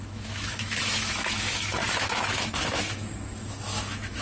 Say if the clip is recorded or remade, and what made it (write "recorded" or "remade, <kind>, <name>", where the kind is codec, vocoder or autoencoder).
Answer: remade, autoencoder, DAC-VAE